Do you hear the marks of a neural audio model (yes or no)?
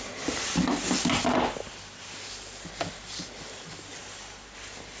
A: no